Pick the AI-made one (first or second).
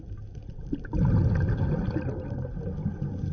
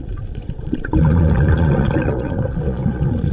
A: second